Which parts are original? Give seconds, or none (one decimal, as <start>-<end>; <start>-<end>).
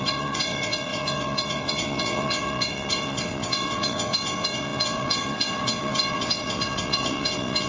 none